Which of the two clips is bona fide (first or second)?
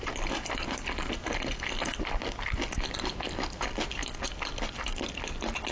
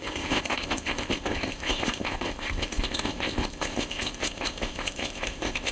first